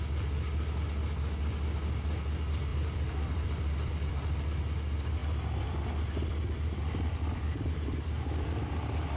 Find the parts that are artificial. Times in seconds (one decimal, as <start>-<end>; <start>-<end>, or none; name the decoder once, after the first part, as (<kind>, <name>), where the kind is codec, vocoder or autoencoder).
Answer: 2.7-4.6 (vocoder, BigVGAN v2); 5.2-9.2